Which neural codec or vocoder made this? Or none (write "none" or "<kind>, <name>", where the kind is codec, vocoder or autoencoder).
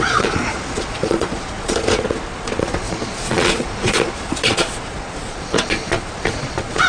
vocoder, Vocos